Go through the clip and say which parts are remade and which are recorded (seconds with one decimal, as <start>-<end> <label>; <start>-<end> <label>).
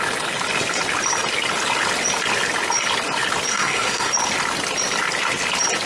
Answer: 0.0-3.5 recorded; 3.5-4.1 remade; 4.1-5.9 recorded